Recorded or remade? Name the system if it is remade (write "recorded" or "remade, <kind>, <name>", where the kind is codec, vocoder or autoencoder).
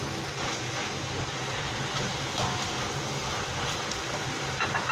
recorded